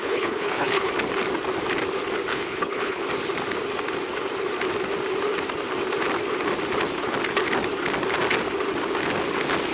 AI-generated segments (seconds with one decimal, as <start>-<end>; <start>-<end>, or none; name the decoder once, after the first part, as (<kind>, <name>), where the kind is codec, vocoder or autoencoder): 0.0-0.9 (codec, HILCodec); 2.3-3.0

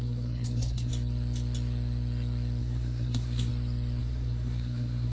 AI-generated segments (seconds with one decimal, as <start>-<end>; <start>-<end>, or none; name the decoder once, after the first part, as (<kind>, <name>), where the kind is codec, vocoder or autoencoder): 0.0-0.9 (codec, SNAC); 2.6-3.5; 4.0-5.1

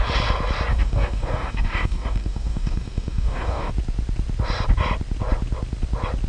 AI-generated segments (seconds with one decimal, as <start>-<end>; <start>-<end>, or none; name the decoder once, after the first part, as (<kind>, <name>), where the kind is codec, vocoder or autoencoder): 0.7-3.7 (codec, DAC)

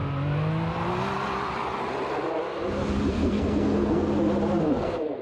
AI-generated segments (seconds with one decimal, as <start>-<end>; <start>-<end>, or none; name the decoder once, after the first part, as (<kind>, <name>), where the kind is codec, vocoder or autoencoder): 3.1-4.1 (codec, SNAC); 4.6-5.2

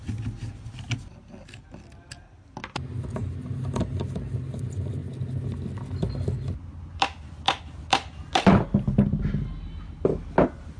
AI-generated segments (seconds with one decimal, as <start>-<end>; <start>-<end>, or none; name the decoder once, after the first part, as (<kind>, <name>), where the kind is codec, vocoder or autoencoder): none

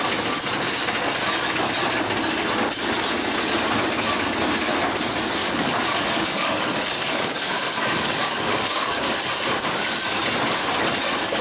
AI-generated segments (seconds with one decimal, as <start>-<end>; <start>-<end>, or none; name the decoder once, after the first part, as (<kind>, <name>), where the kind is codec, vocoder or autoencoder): 5.4-9.0 (codec, DAC)

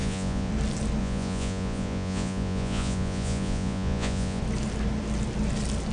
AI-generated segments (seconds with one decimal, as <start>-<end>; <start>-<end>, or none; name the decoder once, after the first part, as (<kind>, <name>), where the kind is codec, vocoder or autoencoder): 0.0-0.5 (vocoder, Vocos); 1.0-4.4

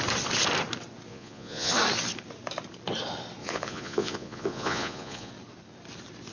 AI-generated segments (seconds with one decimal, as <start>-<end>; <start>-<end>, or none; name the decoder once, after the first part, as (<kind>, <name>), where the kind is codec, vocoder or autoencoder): 1.1-1.7 (vocoder, Vocos); 3.4-5.3